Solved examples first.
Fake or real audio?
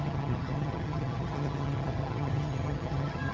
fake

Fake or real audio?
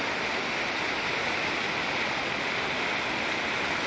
real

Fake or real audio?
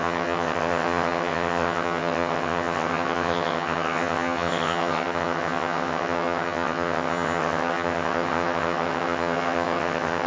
fake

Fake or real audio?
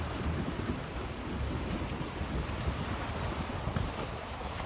real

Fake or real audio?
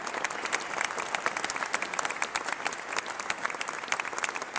real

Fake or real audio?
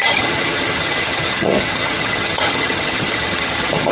fake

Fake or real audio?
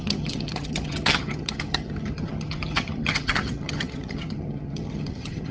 fake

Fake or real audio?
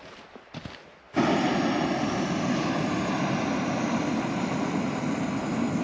real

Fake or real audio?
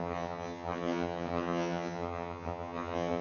fake